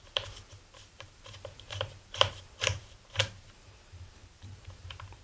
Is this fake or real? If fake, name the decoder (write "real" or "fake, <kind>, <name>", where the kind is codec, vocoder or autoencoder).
fake, vocoder, BigVGAN v2